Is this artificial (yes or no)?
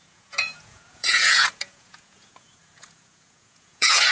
yes